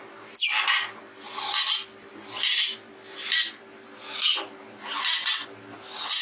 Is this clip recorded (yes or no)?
yes